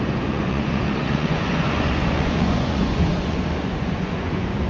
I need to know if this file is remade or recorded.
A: remade